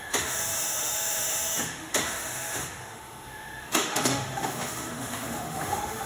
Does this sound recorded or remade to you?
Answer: remade